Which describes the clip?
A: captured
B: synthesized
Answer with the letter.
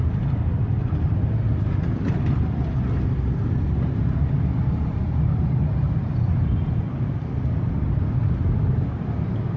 A